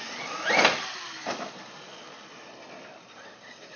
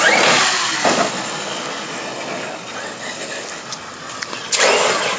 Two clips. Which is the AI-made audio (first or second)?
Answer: first